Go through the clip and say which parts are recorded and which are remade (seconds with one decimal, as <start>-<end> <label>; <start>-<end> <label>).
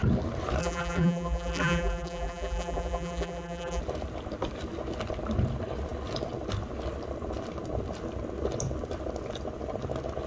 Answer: 0.0-0.6 recorded; 0.6-3.8 remade; 3.8-10.3 recorded